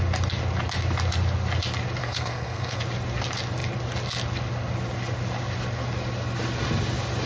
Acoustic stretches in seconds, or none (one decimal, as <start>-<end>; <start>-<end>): 0.0-2.0; 2.8-7.3